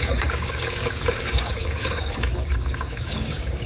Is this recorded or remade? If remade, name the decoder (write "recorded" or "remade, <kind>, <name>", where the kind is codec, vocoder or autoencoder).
remade, codec, DAC